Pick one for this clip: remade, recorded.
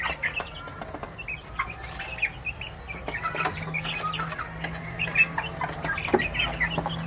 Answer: recorded